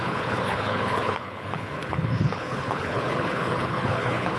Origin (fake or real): fake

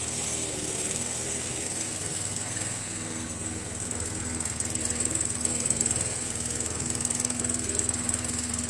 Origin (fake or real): fake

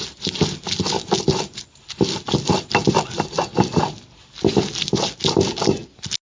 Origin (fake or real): real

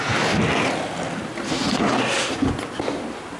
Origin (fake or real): real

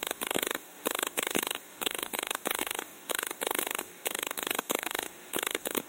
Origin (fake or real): fake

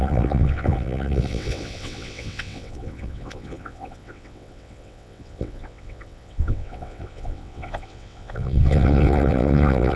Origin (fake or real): fake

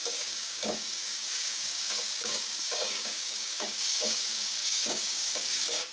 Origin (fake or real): fake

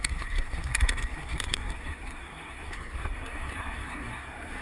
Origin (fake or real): fake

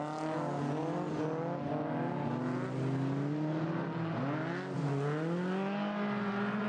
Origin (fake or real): real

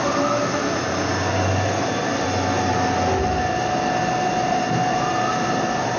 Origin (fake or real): real